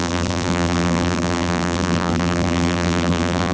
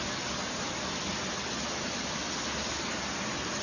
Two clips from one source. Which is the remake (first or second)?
first